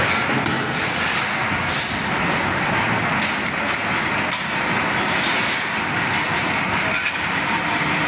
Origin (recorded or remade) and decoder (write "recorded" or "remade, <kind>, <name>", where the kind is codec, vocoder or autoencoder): recorded